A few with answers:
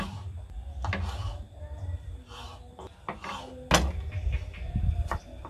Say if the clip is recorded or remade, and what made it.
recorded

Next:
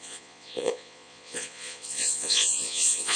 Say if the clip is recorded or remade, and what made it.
remade, vocoder, Vocos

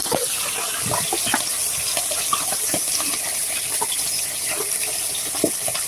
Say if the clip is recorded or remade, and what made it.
recorded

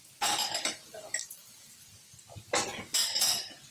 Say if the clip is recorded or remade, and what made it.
recorded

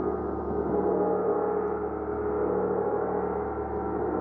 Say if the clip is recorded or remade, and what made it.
recorded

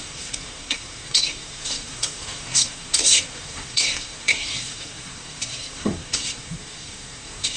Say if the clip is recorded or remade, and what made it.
remade, codec, SNAC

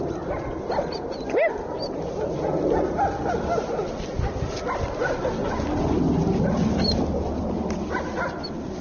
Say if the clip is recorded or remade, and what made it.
recorded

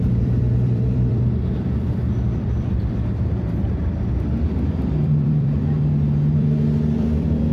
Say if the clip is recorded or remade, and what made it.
remade, vocoder, BigVGAN v2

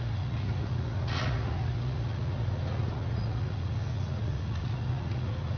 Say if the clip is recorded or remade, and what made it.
remade, vocoder, Vocos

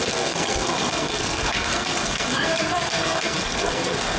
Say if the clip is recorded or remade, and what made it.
remade, codec, SNAC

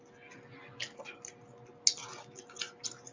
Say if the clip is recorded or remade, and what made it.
recorded